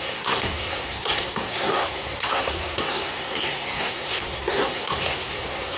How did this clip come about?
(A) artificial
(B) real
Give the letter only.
A